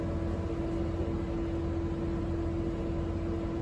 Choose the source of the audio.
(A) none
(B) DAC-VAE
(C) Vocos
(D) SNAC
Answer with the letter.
A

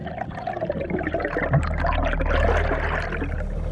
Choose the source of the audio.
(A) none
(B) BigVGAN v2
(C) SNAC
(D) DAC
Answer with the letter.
A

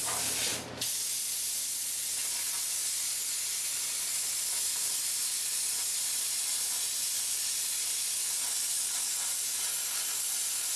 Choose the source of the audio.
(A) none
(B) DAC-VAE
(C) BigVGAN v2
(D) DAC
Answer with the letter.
A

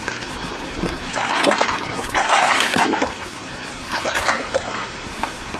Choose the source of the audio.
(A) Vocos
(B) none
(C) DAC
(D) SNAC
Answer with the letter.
D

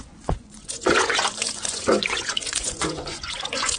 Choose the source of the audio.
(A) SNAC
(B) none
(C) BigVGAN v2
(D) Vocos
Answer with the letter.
D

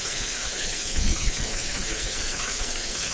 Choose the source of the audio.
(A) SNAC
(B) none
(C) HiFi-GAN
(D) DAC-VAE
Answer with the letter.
A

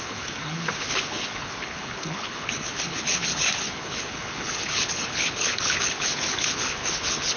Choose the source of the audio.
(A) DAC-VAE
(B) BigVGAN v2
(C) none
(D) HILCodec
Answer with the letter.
D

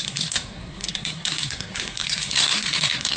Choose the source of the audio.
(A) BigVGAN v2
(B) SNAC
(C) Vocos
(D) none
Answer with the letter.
B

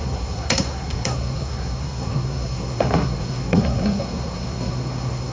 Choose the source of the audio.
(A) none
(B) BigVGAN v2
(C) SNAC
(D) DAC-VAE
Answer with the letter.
C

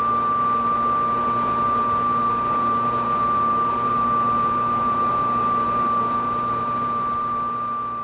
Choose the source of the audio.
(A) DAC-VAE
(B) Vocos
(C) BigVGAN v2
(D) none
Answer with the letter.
C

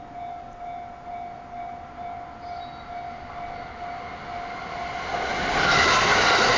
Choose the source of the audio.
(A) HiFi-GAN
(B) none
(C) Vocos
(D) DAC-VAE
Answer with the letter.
B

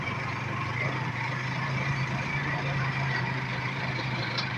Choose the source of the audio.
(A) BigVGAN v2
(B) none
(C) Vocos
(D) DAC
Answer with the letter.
A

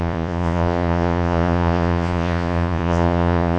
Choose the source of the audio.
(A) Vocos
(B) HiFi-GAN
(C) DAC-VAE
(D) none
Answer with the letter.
A